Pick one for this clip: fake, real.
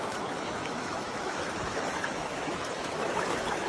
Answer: fake